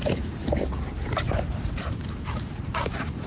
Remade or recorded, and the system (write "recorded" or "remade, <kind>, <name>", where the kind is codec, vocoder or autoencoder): remade, vocoder, BigVGAN v2